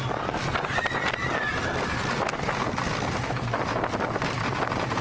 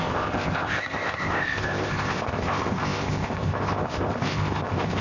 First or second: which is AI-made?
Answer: second